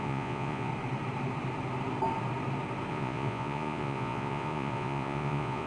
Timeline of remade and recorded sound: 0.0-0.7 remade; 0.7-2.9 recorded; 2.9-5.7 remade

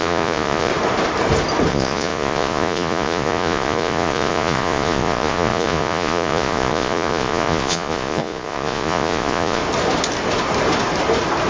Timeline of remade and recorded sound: 0.0-0.7 remade; 0.7-1.7 recorded; 1.7-9.6 remade; 9.6-11.5 recorded

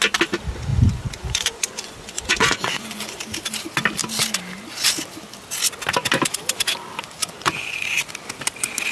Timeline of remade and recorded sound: 0.0-0.7 recorded; 0.7-3.2 remade; 3.2-7.2 recorded; 7.2-8.1 remade; 8.1-8.9 recorded

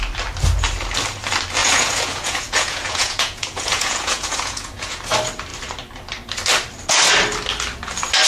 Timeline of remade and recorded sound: 0.0-1.6 recorded; 1.6-5.0 remade; 5.0-8.3 recorded

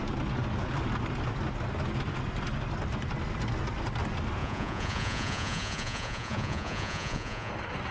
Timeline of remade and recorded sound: 0.0-4.4 recorded; 4.4-7.5 remade; 7.5-7.9 recorded

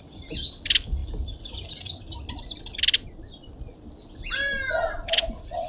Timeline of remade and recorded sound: 0.0-4.8 recorded; 4.8-5.7 remade